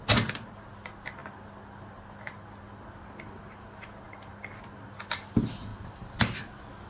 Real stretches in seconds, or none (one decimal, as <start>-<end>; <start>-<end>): 0.0-5.7; 6.4-6.9